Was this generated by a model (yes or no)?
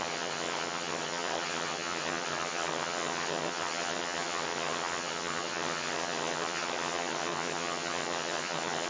yes